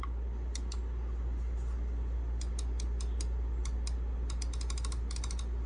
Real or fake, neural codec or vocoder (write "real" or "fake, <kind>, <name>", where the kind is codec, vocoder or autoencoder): real